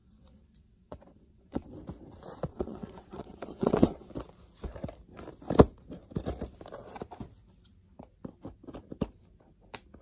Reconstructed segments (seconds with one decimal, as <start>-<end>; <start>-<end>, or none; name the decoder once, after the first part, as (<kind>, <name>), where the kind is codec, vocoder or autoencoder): 0.0-1.7 (vocoder, WaveNeXt); 2.5-4.1